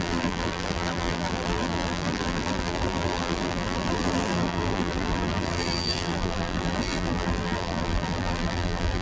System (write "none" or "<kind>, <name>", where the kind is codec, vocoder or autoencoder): vocoder, BigVGAN v2